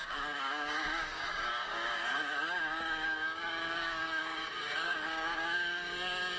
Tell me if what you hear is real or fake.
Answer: fake